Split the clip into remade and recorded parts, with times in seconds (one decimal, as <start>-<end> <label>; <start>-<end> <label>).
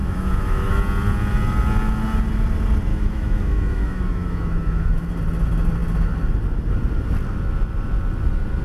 0.0-0.8 remade; 0.8-2.9 recorded; 2.9-5.1 remade; 5.1-8.6 recorded